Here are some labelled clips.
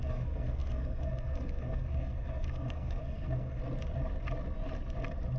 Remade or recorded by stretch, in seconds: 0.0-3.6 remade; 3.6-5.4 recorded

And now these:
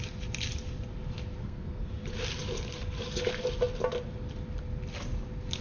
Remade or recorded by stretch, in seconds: 0.0-1.4 recorded; 1.4-1.9 remade; 1.9-5.6 recorded

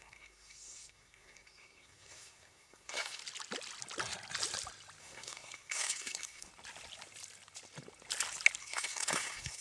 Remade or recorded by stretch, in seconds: 0.0-3.2 remade; 3.2-5.0 recorded; 5.0-6.5 remade; 6.5-8.6 recorded; 8.6-9.6 remade